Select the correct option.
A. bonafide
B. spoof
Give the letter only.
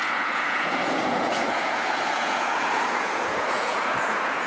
B